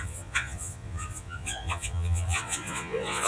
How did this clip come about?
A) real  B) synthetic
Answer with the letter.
B